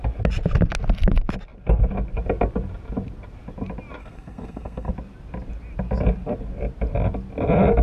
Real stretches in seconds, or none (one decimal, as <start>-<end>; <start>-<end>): 0.0-4.0; 4.9-7.8